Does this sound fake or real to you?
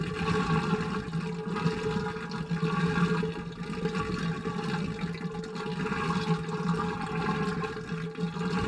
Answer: real